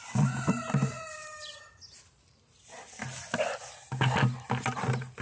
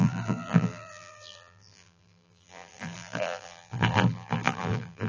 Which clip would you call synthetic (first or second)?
second